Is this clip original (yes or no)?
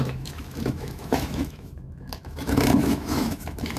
no